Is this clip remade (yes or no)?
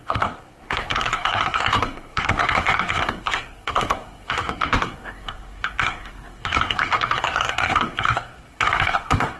yes